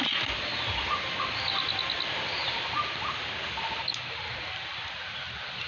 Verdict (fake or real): real